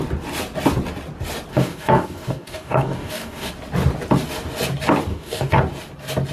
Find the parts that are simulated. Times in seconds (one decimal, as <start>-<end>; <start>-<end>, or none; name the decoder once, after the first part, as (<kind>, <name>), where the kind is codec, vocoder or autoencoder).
1.5-3.5 (codec, DAC); 5.1-5.6